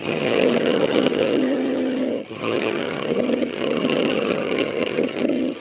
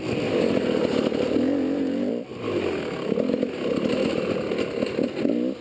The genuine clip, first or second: second